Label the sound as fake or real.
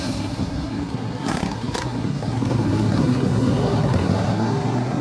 fake